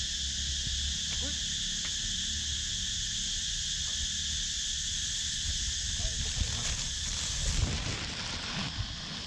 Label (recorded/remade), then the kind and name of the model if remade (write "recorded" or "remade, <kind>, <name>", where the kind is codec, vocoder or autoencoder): recorded